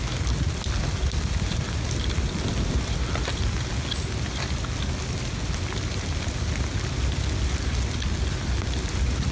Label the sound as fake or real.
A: real